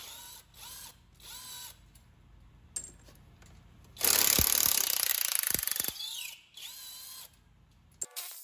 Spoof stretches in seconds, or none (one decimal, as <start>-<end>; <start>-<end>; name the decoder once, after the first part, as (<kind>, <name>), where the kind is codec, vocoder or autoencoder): none